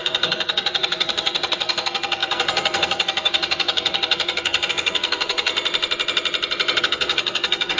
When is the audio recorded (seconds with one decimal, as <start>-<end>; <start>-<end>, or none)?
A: 5.5-6.8